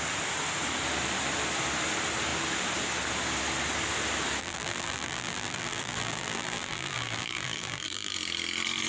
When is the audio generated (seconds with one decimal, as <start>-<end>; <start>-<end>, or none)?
4.4-8.1